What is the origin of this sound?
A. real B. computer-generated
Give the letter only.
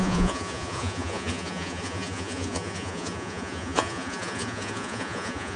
B